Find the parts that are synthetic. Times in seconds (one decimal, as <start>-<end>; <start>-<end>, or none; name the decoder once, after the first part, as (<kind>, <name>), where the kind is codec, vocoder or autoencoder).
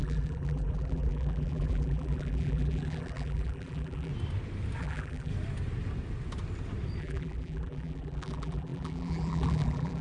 0.0-4.1 (vocoder, BigVGAN v2); 4.8-5.3; 7.0-10.0